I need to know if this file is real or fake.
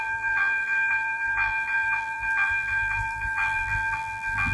fake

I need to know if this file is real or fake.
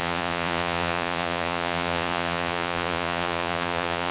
fake